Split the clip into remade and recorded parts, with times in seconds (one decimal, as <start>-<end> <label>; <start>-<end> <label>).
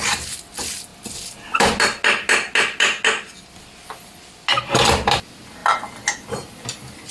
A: 0.0-7.1 recorded